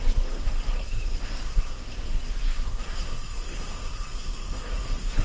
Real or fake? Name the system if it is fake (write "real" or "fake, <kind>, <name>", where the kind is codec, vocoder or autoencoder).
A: fake, codec, SNAC